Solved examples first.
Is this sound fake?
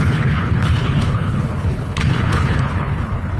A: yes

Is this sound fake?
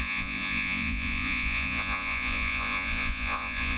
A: yes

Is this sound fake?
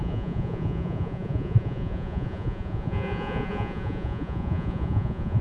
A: yes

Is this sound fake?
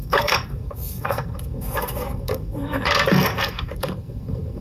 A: yes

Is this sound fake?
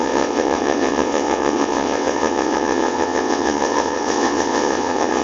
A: yes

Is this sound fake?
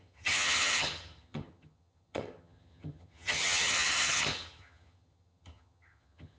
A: yes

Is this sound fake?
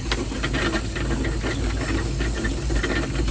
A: no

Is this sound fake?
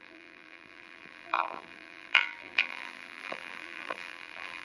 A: yes